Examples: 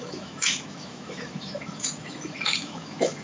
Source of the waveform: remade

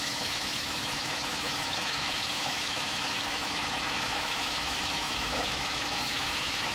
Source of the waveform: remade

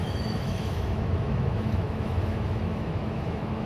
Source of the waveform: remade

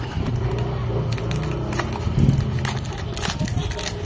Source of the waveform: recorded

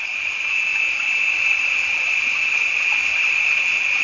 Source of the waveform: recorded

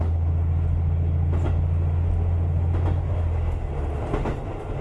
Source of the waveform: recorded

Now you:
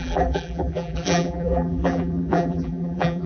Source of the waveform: remade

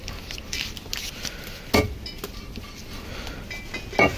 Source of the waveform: recorded